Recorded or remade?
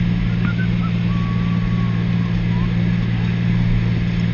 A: recorded